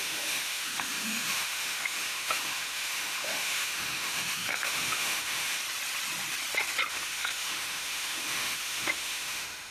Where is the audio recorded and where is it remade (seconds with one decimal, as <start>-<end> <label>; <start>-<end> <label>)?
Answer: 0.0-5.6 remade; 5.6-6.9 recorded; 6.9-9.7 remade